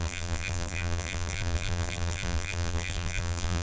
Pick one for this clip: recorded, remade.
remade